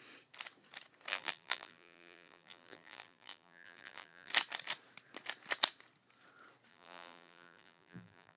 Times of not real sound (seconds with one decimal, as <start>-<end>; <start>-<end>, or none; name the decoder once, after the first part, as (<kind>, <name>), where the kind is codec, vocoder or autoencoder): 1.1-4.3 (vocoder, BigVGAN v2); 6.7-8.4